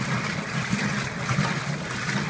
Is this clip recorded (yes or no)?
yes